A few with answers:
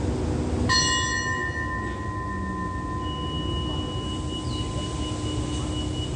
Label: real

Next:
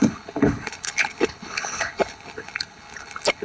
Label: fake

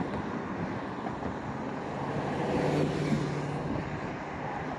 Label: real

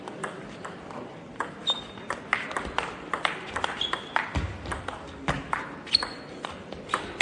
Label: real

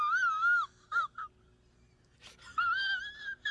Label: real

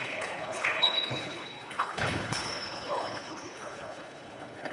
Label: fake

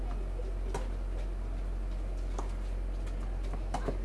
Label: real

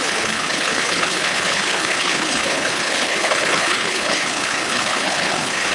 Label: fake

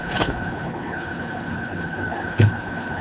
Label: fake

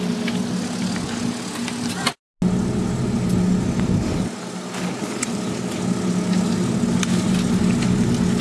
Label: real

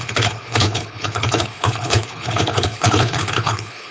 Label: fake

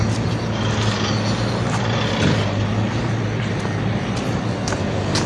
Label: real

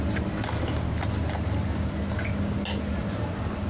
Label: real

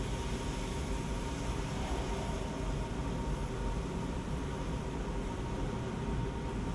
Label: real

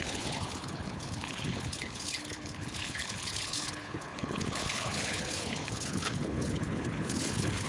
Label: fake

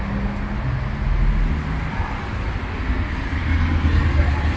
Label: real